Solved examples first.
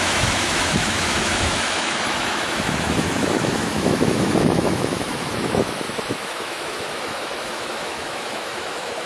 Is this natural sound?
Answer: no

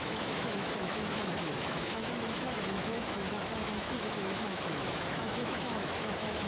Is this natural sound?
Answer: no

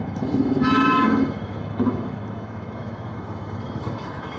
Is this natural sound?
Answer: no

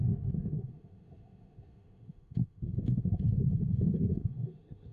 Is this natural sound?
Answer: no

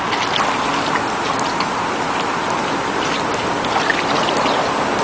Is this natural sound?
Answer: yes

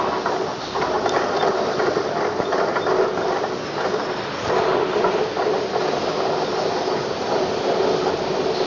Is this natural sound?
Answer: yes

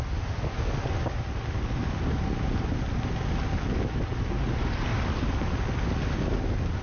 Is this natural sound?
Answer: yes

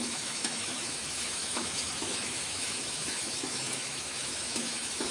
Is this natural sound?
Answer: no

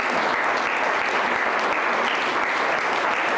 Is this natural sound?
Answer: yes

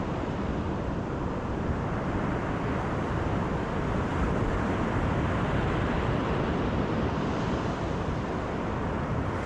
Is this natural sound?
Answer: yes